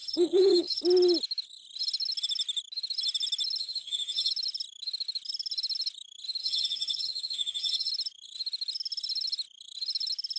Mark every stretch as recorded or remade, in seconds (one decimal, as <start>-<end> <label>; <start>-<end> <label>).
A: 0.0-0.8 remade; 0.8-3.6 recorded; 3.6-4.3 remade; 4.3-6.4 recorded; 6.4-7.9 remade; 7.9-10.4 recorded